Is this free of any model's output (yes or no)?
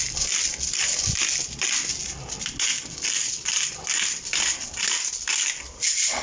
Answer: yes